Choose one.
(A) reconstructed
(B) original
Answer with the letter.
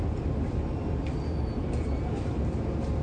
A